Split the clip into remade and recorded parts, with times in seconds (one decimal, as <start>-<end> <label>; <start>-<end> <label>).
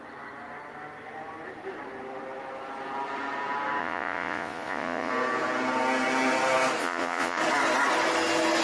0.0-3.8 recorded; 3.8-5.1 remade; 5.1-6.8 recorded; 6.8-7.4 remade; 7.4-8.6 recorded